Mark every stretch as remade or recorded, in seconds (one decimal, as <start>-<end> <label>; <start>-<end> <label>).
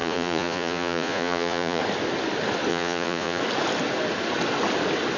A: 0.0-1.8 remade; 1.8-2.7 recorded; 2.7-3.4 remade; 3.4-5.2 recorded